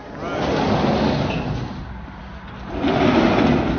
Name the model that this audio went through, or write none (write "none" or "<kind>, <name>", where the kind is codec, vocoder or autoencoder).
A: none